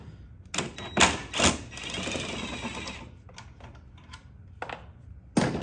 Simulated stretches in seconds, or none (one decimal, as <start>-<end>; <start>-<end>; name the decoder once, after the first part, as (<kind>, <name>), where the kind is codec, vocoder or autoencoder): none